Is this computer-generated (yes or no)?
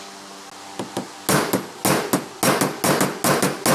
no